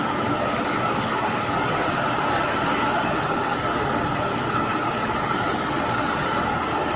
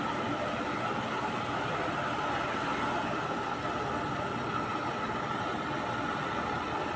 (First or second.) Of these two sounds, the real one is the second